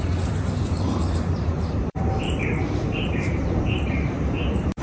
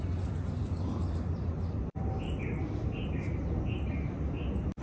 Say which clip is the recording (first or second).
second